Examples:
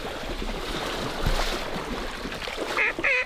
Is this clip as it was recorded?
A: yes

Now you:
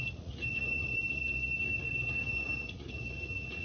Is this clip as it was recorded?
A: no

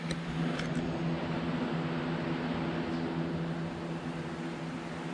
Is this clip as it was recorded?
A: yes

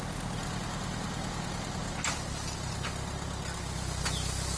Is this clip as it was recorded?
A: yes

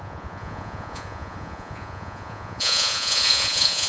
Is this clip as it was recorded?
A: no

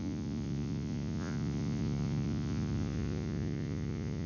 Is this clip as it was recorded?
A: no